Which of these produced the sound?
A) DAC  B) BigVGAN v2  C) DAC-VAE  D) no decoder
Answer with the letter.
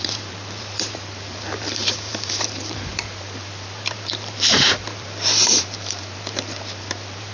B